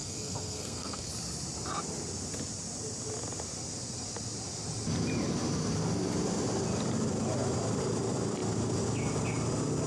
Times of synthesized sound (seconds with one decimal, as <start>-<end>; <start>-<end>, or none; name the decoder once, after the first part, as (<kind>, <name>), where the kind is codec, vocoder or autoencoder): 0.0-1.1 (codec, SNAC)